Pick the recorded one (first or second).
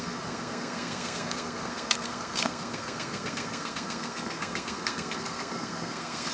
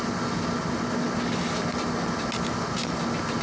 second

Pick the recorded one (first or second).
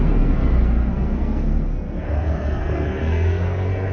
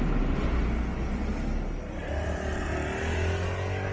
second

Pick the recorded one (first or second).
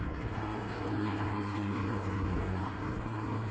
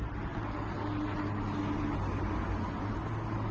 second